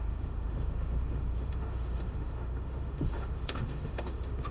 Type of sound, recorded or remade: remade